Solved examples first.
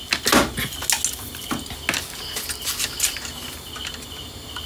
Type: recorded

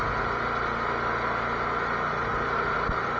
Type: recorded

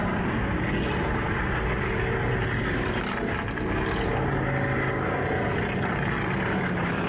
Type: recorded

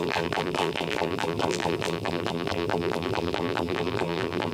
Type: remade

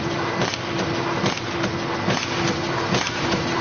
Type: recorded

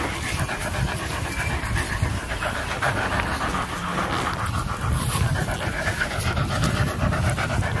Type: recorded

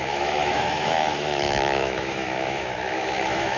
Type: remade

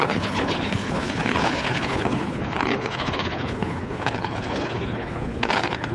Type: remade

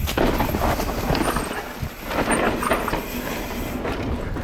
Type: recorded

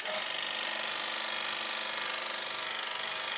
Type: recorded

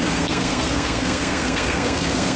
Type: remade